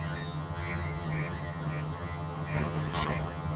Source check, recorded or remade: remade